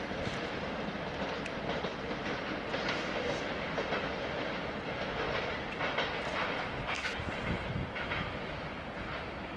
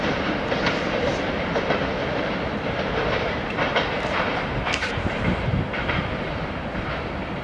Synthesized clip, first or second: second